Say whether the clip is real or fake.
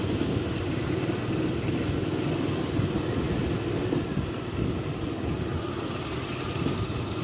real